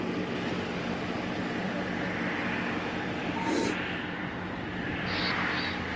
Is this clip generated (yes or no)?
no